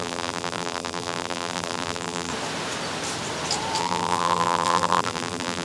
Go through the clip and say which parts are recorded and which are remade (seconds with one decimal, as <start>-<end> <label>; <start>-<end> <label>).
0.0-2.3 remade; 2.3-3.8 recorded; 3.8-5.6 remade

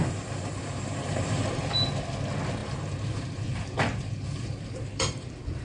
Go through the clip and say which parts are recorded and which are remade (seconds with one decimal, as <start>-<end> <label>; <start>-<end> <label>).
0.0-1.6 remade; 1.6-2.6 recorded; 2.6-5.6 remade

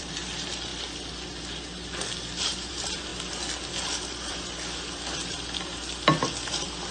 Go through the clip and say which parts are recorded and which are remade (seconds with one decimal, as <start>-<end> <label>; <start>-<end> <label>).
0.0-0.7 remade; 0.7-2.7 recorded; 2.7-3.1 remade; 3.1-3.7 recorded; 3.7-6.9 remade